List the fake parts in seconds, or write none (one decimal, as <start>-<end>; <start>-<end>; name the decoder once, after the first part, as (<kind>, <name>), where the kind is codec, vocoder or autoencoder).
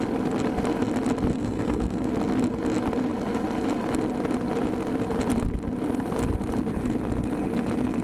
1.3-2.1 (codec, SNAC)